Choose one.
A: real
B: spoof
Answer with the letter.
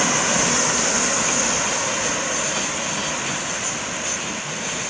A